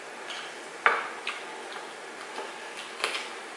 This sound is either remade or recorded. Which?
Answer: recorded